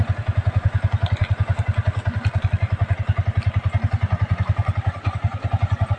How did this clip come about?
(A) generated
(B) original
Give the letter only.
B